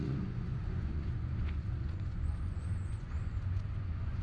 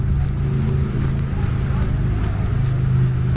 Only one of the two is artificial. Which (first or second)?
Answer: first